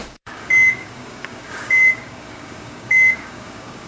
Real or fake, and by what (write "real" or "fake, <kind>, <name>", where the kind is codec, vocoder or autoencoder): fake, codec, DAC